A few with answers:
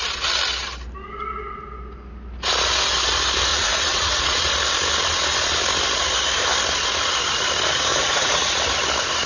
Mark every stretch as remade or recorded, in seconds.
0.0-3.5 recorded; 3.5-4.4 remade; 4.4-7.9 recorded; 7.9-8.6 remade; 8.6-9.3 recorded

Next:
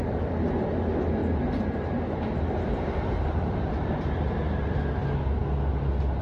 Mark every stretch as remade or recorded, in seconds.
0.0-1.2 recorded; 1.2-4.9 remade; 4.9-6.2 recorded